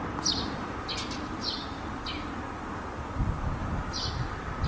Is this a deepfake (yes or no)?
no